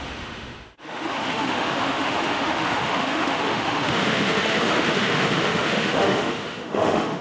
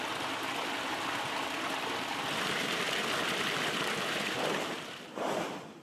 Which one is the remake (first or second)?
first